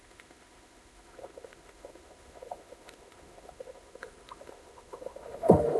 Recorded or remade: remade